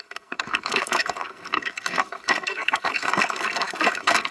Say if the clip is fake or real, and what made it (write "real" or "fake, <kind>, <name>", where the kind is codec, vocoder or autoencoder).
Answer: fake, codec, SNAC